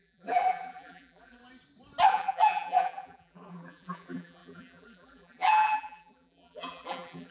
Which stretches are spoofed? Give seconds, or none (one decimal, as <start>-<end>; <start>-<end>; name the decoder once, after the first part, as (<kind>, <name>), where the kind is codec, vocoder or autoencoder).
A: 0.0-1.4 (vocoder, BigVGAN v2); 2.1-7.3